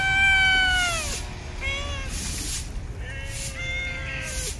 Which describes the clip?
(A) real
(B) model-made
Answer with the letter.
A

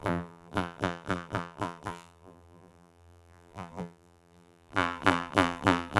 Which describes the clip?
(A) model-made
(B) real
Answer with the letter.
A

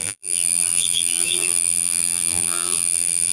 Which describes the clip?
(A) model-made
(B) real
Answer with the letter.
A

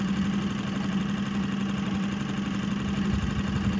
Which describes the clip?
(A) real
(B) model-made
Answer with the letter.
A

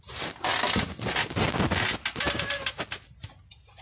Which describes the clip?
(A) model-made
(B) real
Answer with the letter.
B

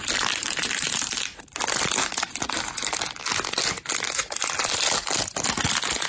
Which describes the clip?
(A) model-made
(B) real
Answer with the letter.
B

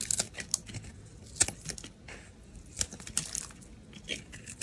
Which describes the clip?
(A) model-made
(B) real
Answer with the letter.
B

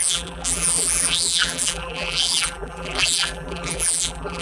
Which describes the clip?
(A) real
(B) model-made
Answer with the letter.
B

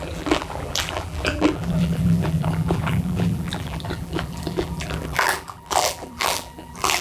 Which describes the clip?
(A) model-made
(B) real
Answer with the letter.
A